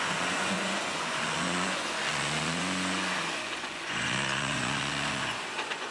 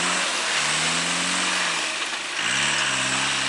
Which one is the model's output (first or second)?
first